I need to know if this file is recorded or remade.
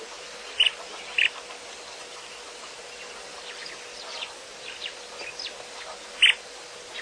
recorded